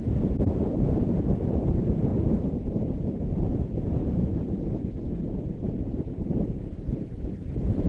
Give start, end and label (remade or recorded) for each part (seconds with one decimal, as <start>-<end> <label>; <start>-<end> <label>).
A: 0.0-2.1 remade; 2.1-2.7 recorded; 2.7-7.9 remade